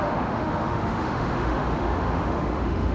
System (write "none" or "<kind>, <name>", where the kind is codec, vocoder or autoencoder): autoencoder, DAC-VAE